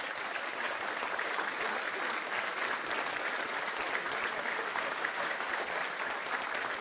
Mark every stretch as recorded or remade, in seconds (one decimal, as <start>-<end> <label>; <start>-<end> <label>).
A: 0.0-4.5 recorded; 4.5-5.5 remade; 5.5-6.8 recorded